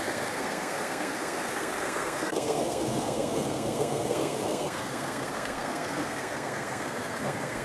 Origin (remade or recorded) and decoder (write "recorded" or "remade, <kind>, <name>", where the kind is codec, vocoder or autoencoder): remade, codec, SNAC